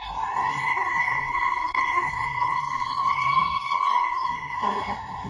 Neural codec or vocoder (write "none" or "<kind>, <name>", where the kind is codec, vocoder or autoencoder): codec, SNAC